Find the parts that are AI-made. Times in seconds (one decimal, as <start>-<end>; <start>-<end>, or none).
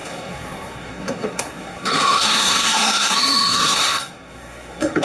0.0-5.0